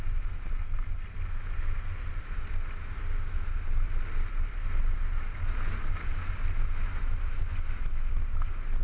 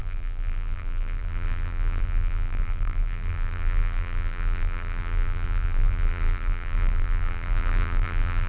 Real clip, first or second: first